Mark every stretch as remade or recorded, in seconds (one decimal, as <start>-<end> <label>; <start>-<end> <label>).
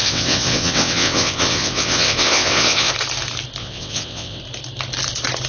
0.0-2.9 remade; 2.9-3.6 recorded; 3.6-4.4 remade; 4.4-5.5 recorded